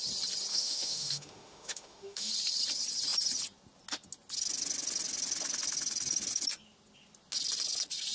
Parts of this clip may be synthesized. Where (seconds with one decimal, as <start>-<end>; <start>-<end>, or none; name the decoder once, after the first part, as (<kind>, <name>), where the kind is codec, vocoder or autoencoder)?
0.5-2.3 (autoencoder, DAC-VAE)